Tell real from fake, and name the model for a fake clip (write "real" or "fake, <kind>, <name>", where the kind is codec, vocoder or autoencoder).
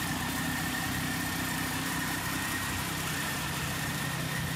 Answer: fake, vocoder, BigVGAN v2